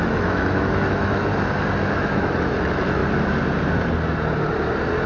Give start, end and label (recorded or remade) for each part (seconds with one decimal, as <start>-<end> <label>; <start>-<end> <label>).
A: 0.0-1.3 remade; 1.3-2.0 recorded; 2.0-3.0 remade; 3.0-5.1 recorded